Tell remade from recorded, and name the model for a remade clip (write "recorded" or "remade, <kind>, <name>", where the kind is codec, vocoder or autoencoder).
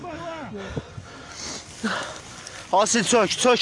recorded